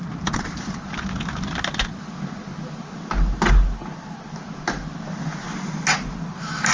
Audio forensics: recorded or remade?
recorded